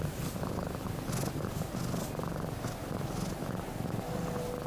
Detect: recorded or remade recorded